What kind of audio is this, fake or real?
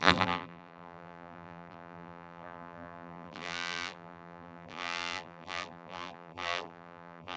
fake